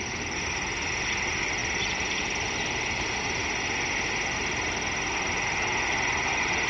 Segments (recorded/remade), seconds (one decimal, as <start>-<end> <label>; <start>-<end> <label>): 0.0-6.7 recorded